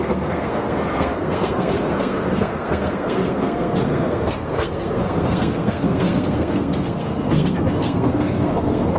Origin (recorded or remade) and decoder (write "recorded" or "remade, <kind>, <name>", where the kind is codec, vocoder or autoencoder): remade, codec, SNAC